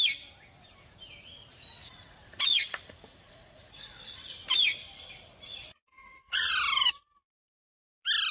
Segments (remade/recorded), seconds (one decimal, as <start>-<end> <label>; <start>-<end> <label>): 0.0-1.8 recorded; 1.8-4.2 remade; 4.2-5.5 recorded; 5.5-6.5 remade; 6.5-8.3 recorded